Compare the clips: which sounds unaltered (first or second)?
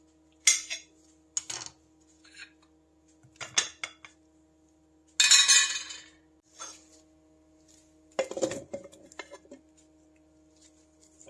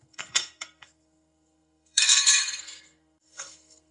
first